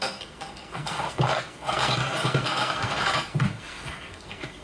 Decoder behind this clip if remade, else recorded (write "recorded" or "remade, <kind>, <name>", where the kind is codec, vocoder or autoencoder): remade, codec, SNAC